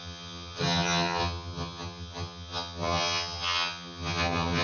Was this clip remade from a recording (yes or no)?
yes